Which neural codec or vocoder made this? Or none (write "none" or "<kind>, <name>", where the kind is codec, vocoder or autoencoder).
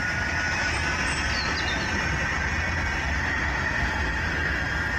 none